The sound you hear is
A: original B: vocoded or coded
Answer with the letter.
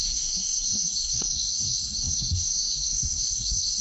B